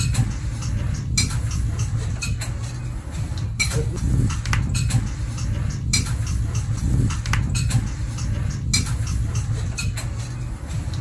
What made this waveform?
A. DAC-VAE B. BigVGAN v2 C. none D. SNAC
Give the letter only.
C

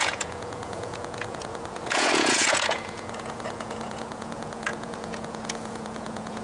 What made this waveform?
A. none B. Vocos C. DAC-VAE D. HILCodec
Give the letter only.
B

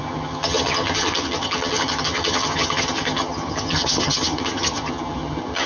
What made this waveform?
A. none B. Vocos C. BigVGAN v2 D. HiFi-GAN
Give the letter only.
D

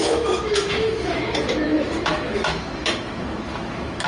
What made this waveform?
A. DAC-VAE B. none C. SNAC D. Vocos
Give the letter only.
A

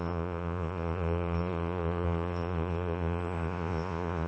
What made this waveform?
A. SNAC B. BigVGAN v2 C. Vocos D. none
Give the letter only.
C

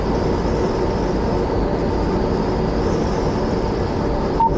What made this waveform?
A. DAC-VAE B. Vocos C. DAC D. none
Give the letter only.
D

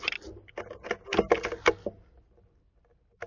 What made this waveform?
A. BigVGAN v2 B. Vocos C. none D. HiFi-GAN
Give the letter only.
C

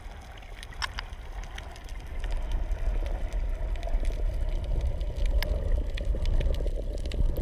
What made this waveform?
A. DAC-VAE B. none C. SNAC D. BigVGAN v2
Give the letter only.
B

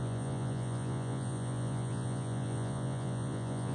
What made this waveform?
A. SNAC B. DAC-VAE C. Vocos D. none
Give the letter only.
C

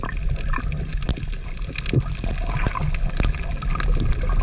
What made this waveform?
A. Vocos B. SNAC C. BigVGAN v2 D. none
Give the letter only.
D